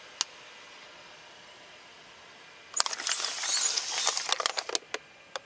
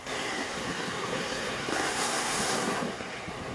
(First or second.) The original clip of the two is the first